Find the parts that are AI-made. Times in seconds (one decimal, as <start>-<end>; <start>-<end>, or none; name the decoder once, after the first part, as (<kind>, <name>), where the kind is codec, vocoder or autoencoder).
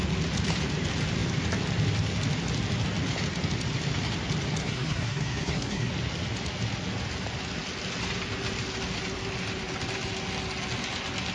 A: 4.6-5.9 (codec, SNAC)